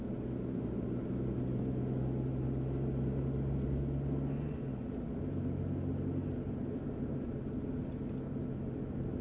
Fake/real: real